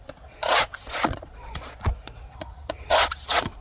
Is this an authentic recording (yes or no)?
no